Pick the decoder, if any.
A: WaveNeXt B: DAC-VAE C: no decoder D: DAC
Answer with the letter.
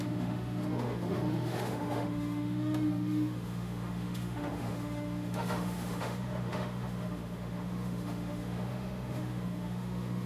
B